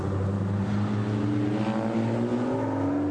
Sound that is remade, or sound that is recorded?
recorded